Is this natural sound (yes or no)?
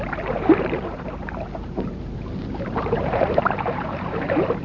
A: no